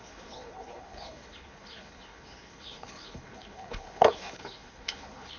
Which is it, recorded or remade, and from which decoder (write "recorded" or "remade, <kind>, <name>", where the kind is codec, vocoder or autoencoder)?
remade, codec, HILCodec